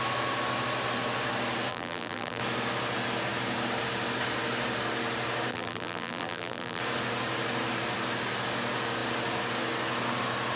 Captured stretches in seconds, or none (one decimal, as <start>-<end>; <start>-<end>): 0.0-1.7; 2.4-5.5; 6.8-10.6